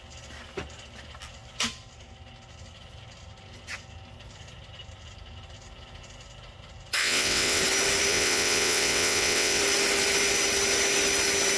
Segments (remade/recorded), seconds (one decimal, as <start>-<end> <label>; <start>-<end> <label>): 0.0-7.0 recorded; 7.0-7.6 remade; 7.6-8.1 recorded; 8.1-9.6 remade; 9.6-11.6 recorded